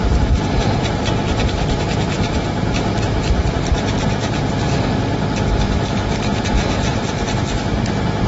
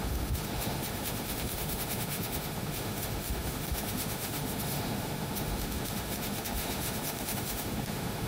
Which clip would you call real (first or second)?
first